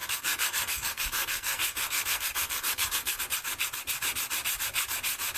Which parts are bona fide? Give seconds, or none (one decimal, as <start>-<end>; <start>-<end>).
3.2-5.4

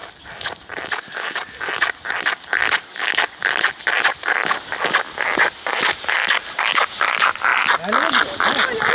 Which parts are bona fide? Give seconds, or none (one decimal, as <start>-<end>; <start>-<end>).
0.0-8.9

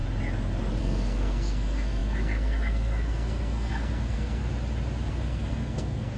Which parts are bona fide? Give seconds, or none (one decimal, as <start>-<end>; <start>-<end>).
0.0-0.8; 4.4-5.1

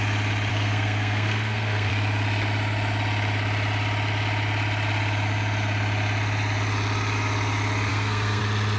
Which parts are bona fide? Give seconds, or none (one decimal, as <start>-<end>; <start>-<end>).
0.0-0.5; 1.9-7.9; 8.4-8.8

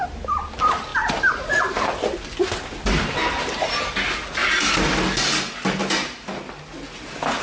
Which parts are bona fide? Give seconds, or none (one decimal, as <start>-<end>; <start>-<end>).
0.0-7.4

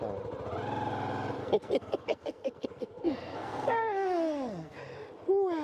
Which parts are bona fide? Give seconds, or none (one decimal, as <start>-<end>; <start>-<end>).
0.0-1.4; 4.8-5.6